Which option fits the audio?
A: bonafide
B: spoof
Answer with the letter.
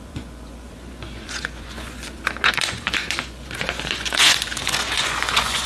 B